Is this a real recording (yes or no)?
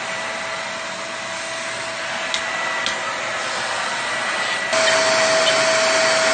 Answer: yes